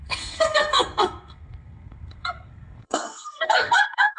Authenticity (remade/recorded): remade